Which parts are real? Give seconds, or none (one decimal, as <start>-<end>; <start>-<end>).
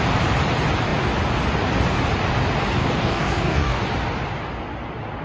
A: 0.0-2.8; 3.8-5.2